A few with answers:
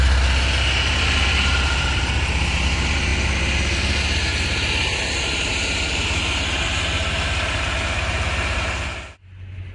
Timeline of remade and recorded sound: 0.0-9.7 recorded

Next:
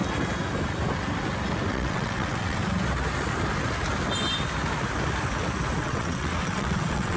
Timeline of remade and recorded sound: 0.0-1.7 recorded; 1.7-2.6 remade; 2.6-5.8 recorded; 5.8-7.2 remade